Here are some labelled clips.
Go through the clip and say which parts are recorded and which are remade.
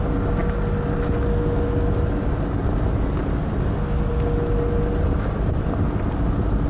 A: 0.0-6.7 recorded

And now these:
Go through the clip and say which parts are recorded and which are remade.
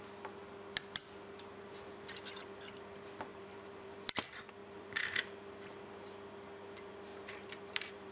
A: 0.0-3.3 recorded; 3.3-3.9 remade; 3.9-4.6 recorded; 4.6-5.2 remade; 5.2-7.1 recorded; 7.1-8.1 remade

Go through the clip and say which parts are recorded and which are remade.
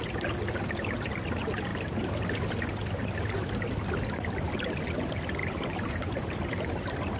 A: 0.0-1.7 recorded; 1.7-2.3 remade; 2.3-5.4 recorded; 5.4-7.2 remade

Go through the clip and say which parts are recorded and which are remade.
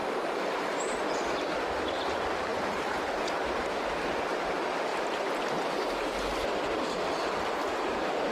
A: 0.0-1.0 remade; 1.0-2.5 recorded; 2.5-3.3 remade; 3.3-8.3 recorded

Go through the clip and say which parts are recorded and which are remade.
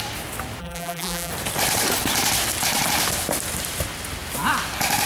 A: 0.0-0.6 recorded; 0.6-1.3 remade; 1.3-5.1 recorded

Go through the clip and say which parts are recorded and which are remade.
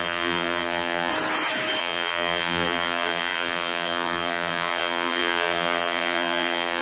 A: 0.0-1.1 remade; 1.1-1.8 recorded; 1.8-6.8 remade